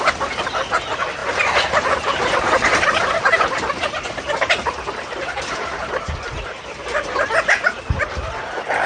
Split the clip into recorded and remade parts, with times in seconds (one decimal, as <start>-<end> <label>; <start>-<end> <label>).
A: 0.0-8.9 recorded